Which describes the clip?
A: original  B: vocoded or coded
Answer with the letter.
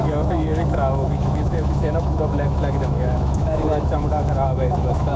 B